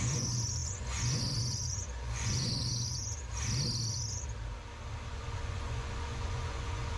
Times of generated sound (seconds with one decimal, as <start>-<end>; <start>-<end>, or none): 0.0-3.0; 5.1-7.0

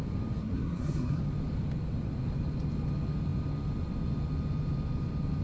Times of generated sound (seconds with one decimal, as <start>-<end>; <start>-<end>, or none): 0.4-1.2

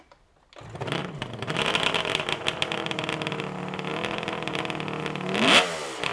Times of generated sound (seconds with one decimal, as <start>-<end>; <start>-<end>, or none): none

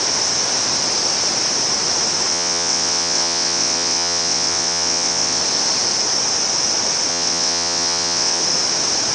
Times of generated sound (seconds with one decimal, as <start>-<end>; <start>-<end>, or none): 2.3-5.4; 7.1-8.4

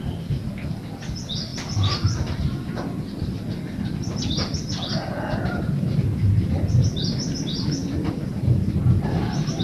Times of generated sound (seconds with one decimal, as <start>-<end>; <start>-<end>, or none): none

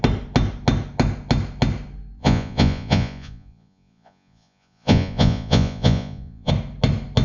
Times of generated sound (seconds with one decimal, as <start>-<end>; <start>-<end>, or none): 2.2-6.5